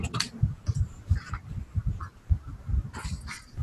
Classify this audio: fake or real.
real